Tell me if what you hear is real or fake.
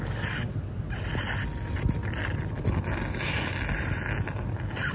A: real